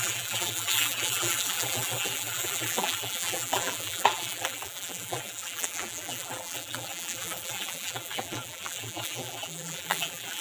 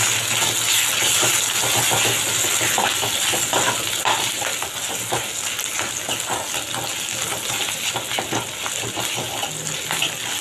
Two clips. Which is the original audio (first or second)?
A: second